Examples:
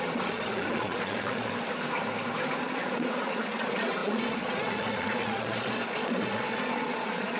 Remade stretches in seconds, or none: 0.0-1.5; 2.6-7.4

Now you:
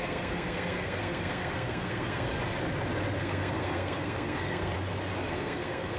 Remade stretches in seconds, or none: 0.0-2.3; 3.2-4.7; 5.3-6.0